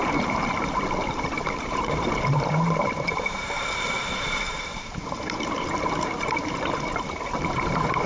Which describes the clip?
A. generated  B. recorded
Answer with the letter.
A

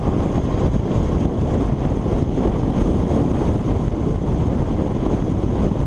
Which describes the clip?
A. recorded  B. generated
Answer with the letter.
A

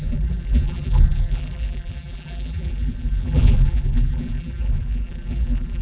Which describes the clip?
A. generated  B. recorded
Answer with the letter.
A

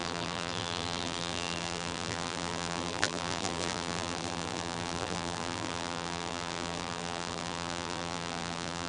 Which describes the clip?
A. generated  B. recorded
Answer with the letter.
A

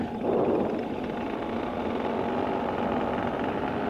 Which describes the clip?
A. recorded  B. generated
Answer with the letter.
A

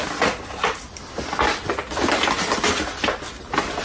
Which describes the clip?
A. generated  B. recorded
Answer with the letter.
B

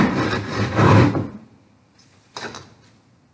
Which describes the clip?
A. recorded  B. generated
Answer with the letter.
B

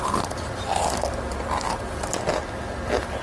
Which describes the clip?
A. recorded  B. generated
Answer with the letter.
A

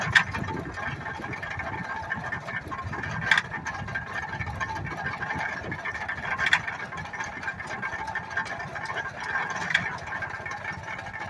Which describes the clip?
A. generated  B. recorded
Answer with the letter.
B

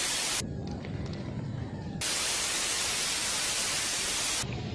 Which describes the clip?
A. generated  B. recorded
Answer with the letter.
B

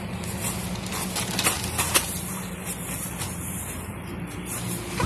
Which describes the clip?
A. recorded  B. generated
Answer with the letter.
A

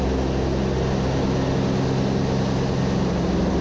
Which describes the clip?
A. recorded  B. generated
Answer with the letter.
A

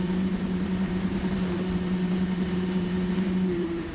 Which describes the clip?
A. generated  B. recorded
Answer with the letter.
A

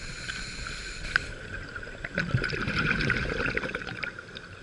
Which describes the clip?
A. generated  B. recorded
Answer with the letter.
A